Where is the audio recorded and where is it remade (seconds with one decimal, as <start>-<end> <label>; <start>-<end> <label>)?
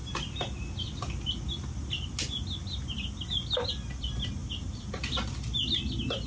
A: 0.0-6.3 recorded